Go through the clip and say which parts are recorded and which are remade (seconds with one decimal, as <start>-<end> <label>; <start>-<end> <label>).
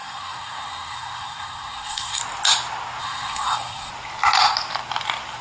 0.0-2.2 remade; 2.2-3.0 recorded; 3.0-3.9 remade; 3.9-5.4 recorded